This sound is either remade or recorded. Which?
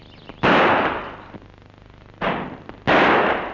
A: recorded